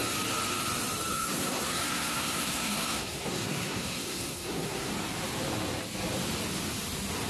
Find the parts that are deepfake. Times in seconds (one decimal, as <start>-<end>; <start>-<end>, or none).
1.1-4.9